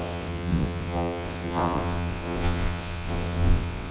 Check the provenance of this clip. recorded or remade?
remade